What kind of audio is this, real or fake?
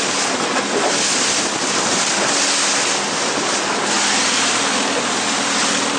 real